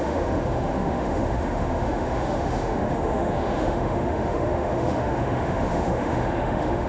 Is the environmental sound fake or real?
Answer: fake